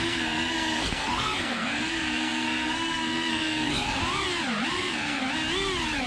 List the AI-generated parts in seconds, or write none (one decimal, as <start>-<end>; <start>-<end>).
0.0-4.0; 4.7-5.2

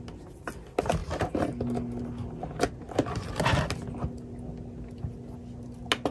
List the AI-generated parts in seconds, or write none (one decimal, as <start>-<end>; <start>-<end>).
none

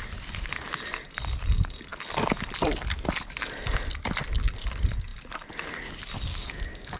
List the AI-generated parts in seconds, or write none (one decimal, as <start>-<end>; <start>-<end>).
6.3-7.0